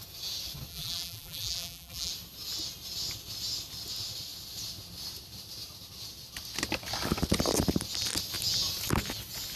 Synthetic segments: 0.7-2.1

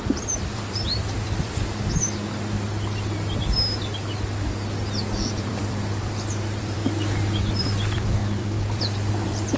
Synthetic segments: 0.0-2.2; 5.4-6.8; 7.5-9.6

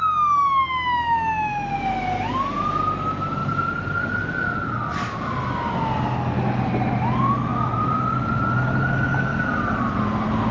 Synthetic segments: 3.4-4.3; 9.3-9.8

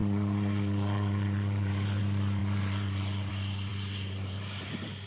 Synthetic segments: 0.0-2.0; 2.4-3.3; 3.7-5.1

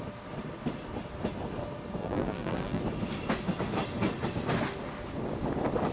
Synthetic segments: 2.0-2.8

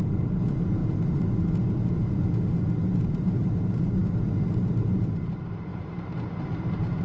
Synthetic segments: 0.0-0.8; 3.1-7.0

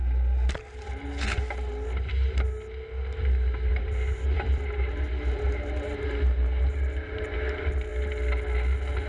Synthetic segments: 3.7-7.9

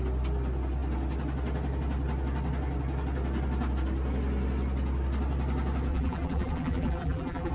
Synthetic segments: 5.9-7.5